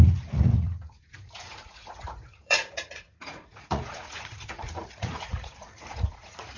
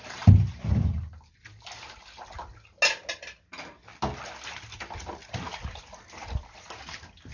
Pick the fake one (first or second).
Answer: first